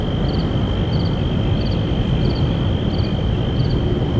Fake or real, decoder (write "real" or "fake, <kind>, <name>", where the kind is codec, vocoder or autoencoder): real